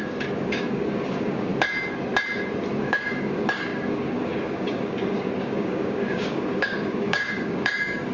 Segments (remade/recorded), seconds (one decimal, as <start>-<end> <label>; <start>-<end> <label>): 0.0-1.5 remade; 1.5-2.8 recorded; 2.8-8.1 remade